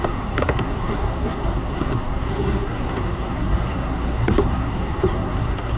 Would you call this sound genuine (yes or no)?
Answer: no